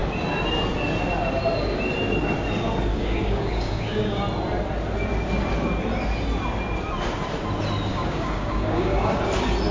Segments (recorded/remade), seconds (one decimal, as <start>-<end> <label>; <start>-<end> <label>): 0.0-2.9 recorded; 2.9-4.2 remade; 4.2-7.9 recorded; 7.9-9.2 remade; 9.2-9.7 recorded

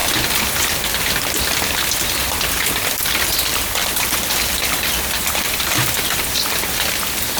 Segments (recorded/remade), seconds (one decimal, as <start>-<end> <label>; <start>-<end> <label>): 0.0-2.2 recorded; 2.2-6.6 remade; 6.6-7.4 recorded

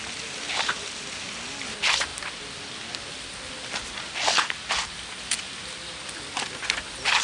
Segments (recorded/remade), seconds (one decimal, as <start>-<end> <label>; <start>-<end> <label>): 0.0-7.2 recorded

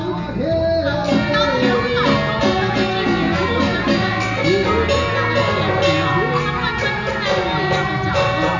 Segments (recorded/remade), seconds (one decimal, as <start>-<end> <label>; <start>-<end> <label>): 0.0-8.6 recorded

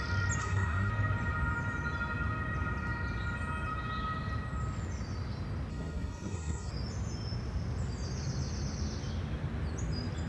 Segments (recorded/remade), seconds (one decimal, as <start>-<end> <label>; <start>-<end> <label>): 0.0-0.4 recorded; 0.4-0.9 remade; 0.9-5.7 recorded; 5.7-6.7 remade; 6.7-10.3 recorded

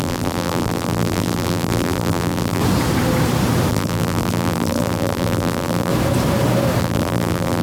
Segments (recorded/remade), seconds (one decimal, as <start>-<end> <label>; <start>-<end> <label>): 0.0-2.6 remade; 2.6-3.7 recorded; 3.7-5.9 remade; 5.9-6.8 recorded; 6.8-7.6 remade

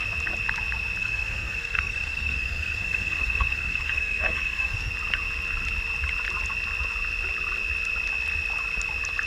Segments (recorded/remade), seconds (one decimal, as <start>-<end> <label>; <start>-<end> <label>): 0.0-1.0 recorded; 1.0-4.9 remade; 4.9-9.3 recorded